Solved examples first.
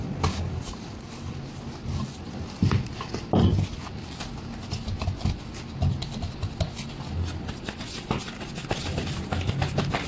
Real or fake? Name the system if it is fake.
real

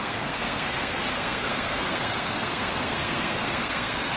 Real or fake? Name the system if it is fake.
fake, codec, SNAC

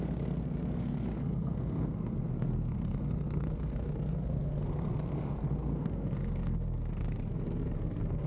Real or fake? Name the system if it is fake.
fake, codec, SNAC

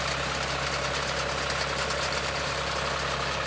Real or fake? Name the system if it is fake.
real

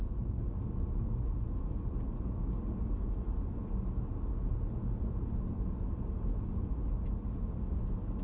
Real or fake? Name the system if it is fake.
real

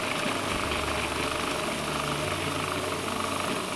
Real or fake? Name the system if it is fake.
real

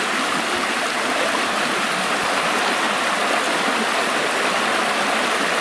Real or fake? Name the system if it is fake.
real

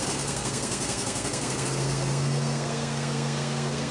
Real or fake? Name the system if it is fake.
fake, codec, SNAC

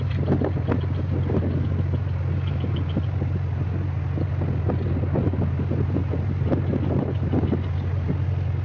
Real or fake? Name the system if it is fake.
real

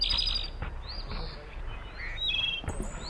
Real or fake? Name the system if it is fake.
real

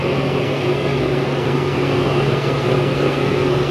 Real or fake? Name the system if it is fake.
fake, codec, SNAC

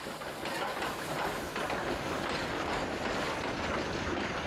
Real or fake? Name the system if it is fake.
real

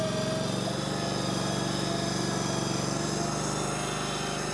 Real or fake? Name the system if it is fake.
real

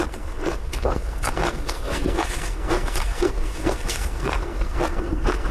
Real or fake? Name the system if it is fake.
fake, codec, SNAC